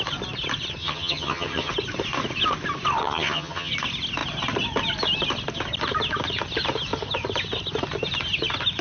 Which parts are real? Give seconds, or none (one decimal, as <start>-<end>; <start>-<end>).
0.0-0.8; 1.7-3.0; 3.7-8.8